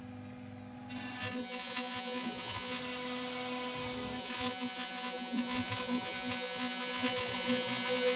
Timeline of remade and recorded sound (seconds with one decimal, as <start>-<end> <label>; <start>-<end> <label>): 0.0-1.2 recorded; 1.2-2.8 remade; 2.8-4.2 recorded; 4.2-8.2 remade